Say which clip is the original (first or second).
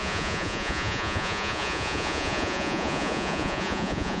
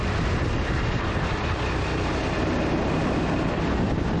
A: second